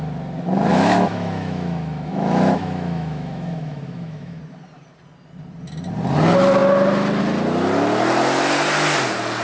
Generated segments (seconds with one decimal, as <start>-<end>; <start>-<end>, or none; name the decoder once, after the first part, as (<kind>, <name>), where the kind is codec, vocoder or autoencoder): 0.7-4.4 (autoencoder, DAC-VAE)